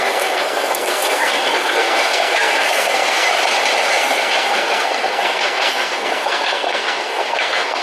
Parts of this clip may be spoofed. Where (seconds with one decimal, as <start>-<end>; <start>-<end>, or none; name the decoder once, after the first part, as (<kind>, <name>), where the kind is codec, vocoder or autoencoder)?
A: 0.0-3.3 (codec, SNAC); 3.9-7.8